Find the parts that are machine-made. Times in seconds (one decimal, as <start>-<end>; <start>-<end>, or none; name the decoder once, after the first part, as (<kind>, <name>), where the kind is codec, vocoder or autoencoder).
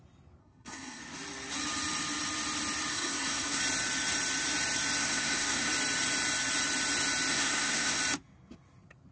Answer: 0.4-1.0 (codec, SNAC); 2.9-3.6; 5.0-5.7; 7.3-8.0